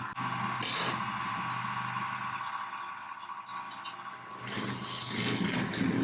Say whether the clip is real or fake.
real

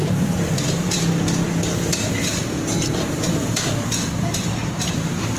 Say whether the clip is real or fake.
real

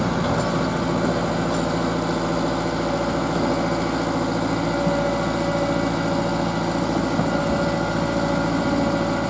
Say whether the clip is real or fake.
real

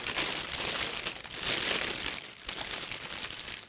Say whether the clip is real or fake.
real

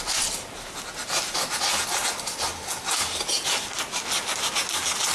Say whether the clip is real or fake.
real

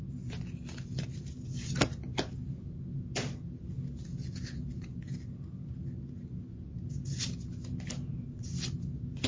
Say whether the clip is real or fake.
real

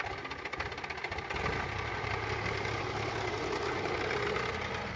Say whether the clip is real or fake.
real